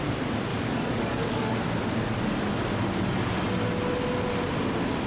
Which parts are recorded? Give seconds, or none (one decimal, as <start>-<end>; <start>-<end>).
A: 0.0-0.5; 1.5-5.1

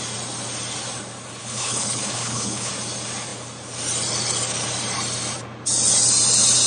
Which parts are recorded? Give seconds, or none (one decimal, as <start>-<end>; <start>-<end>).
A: 0.0-1.4; 2.7-6.7

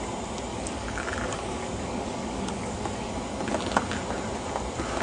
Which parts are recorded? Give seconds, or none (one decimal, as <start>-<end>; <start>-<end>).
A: 0.0-0.5; 3.1-5.0